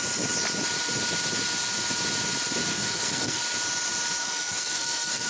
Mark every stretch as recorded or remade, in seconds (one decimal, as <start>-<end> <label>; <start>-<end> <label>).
0.0-2.7 recorded; 2.7-3.4 remade; 3.4-4.2 recorded; 4.2-5.3 remade

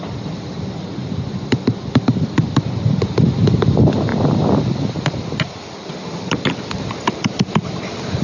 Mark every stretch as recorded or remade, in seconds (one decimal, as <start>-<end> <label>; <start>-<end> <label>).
0.0-8.2 recorded

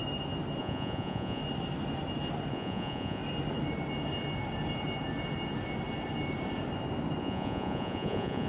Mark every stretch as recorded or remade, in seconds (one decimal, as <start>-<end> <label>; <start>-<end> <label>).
0.0-0.6 recorded; 0.6-1.4 remade; 1.4-2.5 recorded; 2.5-3.2 remade; 3.2-7.2 recorded; 7.2-8.5 remade